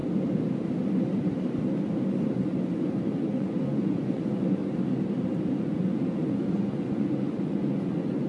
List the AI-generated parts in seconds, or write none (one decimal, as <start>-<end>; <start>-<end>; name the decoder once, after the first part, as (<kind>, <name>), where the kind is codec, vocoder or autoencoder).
3.0-4.6 (vocoder, Vocos); 5.6-8.3